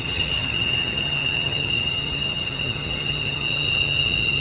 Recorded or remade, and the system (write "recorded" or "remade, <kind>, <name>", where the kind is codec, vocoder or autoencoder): remade, vocoder, HiFi-GAN